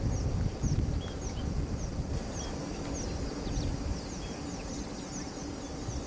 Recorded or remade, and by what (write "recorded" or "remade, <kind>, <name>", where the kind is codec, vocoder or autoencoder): recorded